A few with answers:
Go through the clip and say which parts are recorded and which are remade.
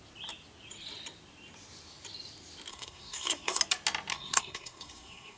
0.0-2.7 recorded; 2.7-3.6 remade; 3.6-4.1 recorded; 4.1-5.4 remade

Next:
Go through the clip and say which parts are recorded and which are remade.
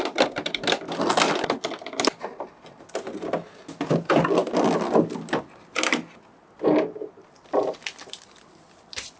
0.0-9.2 recorded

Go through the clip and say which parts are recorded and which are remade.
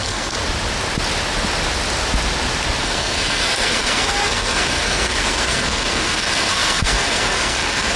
0.0-0.4 remade; 0.4-2.8 recorded; 2.8-8.0 remade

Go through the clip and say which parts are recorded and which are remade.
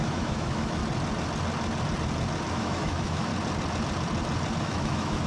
0.0-0.8 remade; 0.8-2.5 recorded; 2.5-3.3 remade; 3.3-4.6 recorded; 4.6-5.3 remade